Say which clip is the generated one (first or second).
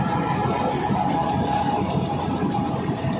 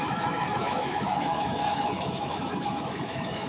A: second